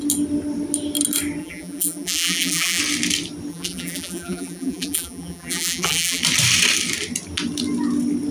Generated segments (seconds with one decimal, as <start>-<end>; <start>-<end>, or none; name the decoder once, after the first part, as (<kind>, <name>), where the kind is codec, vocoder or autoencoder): 1.4-2.8 (vocoder, BigVGAN v2); 3.5-6.2